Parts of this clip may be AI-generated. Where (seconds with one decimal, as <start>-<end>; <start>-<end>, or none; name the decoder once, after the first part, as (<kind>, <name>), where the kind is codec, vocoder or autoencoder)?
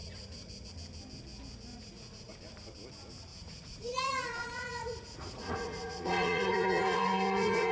0.0-0.7 (vocoder, Vocos); 1.7-2.3; 3.3-7.7